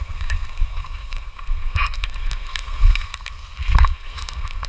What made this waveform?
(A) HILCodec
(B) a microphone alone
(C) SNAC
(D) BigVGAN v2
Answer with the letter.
C